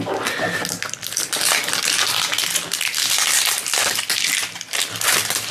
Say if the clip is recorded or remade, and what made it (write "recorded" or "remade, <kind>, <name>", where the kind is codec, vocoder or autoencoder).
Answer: recorded